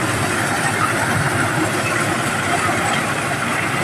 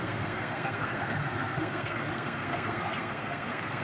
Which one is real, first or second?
first